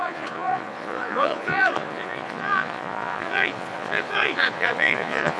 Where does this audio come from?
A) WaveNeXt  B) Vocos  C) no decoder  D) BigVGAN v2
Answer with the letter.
B